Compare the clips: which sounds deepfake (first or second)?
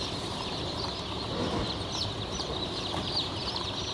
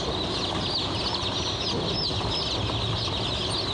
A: first